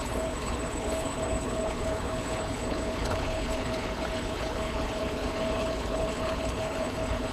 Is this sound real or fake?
fake